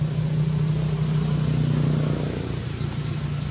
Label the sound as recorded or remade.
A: recorded